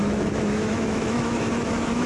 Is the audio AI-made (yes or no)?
yes